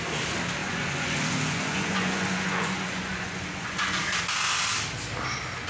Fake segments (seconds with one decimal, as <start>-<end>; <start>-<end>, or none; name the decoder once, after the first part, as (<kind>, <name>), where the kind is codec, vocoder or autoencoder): 0.6-4.0 (vocoder, Vocos)